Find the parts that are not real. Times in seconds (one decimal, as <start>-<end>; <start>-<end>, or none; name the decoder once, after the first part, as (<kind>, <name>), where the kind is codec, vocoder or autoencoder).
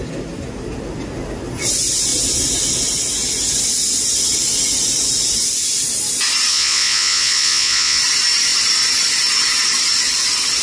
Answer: 6.5-8.0 (vocoder, Vocos)